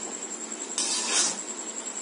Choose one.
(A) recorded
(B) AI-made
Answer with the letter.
A